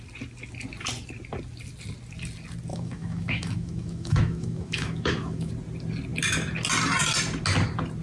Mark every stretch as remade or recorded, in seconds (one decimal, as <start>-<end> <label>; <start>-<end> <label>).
0.0-2.7 recorded; 2.7-5.5 remade; 5.5-8.0 recorded